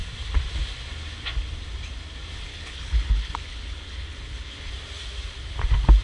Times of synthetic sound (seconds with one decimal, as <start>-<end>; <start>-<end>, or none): 2.5-4.7